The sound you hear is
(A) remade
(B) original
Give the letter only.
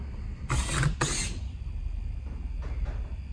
B